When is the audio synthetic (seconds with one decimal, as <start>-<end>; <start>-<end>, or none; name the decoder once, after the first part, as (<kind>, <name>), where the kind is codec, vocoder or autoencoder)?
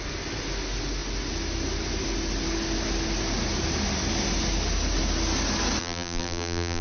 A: 5.8-6.8 (vocoder, BigVGAN v2)